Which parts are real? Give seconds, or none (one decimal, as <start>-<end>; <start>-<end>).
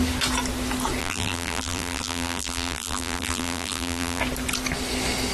0.0-1.0; 4.2-5.3